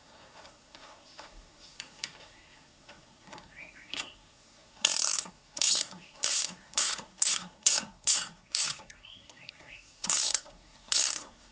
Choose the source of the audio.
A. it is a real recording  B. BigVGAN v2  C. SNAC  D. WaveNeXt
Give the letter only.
C